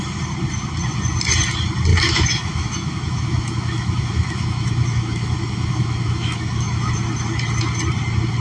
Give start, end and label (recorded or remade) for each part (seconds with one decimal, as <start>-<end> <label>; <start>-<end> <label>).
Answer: 0.0-1.9 recorded; 1.9-6.9 remade; 6.9-8.4 recorded